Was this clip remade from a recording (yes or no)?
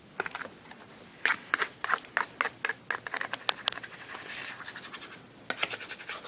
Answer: no